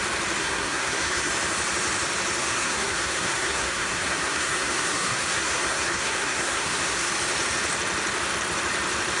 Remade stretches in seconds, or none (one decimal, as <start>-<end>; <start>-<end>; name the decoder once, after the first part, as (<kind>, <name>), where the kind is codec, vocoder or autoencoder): 0.4-1.3 (codec, SNAC); 2.4-7.1